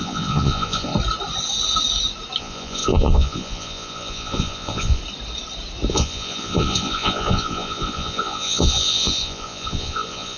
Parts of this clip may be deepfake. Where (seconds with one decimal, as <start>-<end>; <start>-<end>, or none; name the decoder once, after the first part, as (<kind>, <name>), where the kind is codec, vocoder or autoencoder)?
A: 0.0-0.9 (vocoder, Vocos); 2.4-5.0; 5.9-10.4